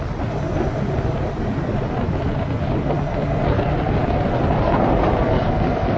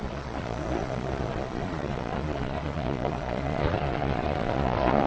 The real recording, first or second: first